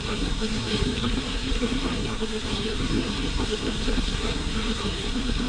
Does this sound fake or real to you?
fake